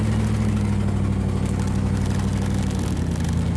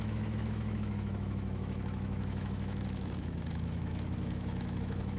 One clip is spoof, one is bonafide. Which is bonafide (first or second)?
first